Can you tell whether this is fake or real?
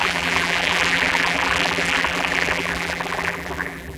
fake